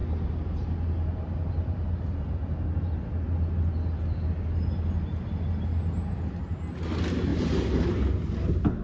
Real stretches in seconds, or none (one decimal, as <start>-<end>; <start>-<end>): 0.0-7.3; 7.9-8.8